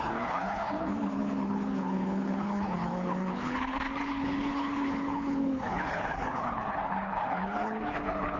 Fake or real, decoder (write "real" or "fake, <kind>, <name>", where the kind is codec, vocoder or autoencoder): fake, codec, HILCodec